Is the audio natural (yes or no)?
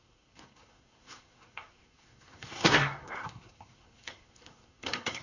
no